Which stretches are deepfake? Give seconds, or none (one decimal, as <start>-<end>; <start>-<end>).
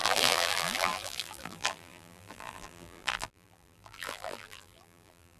0.0-5.4